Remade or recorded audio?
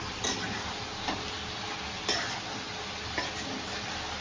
recorded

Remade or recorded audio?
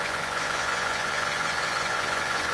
remade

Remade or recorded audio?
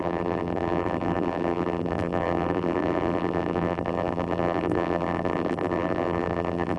remade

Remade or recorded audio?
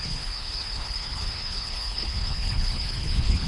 remade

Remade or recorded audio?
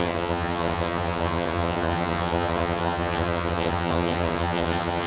remade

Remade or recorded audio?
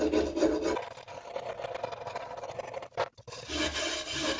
recorded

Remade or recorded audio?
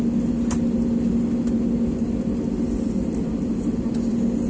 recorded